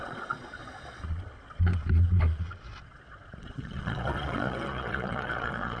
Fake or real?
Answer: fake